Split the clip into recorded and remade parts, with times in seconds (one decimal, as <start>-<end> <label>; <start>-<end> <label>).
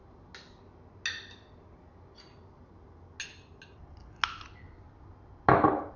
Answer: 0.0-6.0 recorded